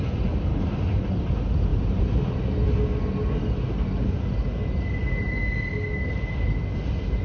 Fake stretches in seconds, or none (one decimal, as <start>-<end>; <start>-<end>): 1.7-2.4; 5.0-5.5